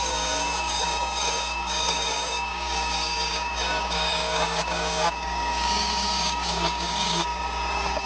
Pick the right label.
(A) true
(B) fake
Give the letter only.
B